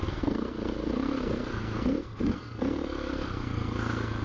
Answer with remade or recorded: remade